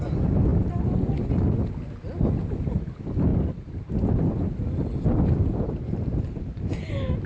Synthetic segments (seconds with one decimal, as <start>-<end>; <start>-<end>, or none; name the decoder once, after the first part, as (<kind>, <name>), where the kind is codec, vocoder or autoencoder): none